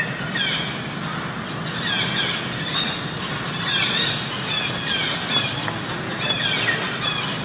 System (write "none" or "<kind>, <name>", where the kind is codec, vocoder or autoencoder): none